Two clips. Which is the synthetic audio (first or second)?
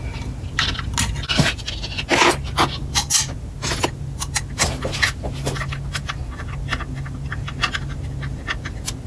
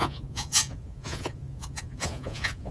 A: second